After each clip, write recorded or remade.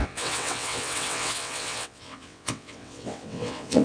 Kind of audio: remade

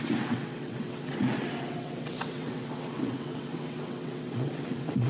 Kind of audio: remade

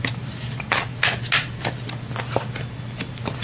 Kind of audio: recorded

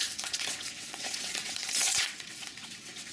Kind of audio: remade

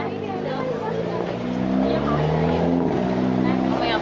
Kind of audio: recorded